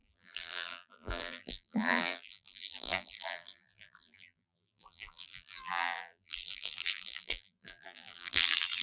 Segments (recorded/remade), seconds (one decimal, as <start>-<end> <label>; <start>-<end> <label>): 0.0-8.8 remade